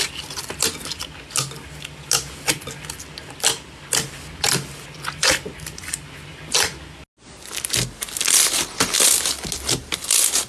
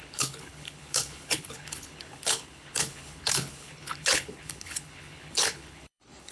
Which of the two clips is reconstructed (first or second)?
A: second